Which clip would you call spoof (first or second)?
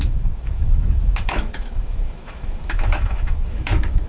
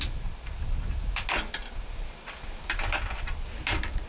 first